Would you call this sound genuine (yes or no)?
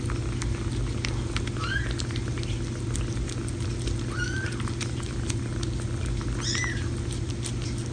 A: yes